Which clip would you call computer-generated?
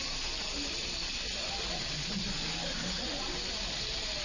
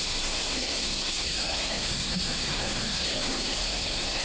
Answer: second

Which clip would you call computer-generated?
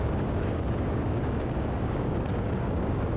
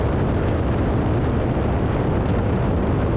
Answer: first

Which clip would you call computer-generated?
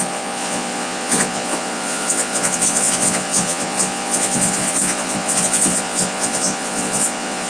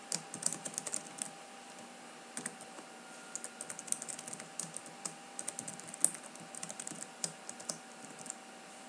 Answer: first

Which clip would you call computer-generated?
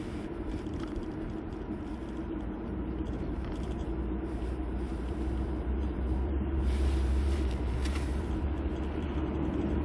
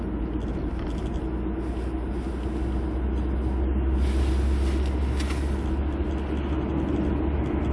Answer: first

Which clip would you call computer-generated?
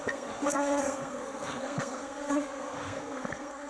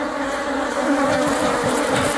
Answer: first